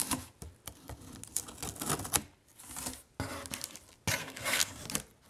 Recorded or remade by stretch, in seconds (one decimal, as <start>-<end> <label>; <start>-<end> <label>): 0.0-4.2 recorded; 4.2-4.8 remade; 4.8-5.3 recorded